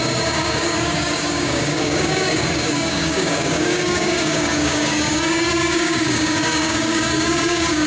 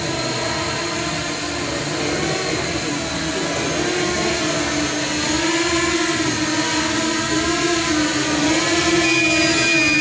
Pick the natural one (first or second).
second